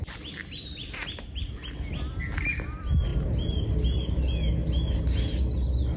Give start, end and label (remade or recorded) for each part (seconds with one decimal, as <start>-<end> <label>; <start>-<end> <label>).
0.0-6.0 recorded